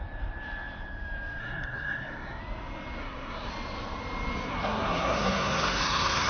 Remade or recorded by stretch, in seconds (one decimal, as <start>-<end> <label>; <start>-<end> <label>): 0.0-1.4 recorded; 1.4-2.4 remade; 2.4-3.0 recorded; 3.0-3.5 remade; 3.5-4.5 recorded; 4.5-6.3 remade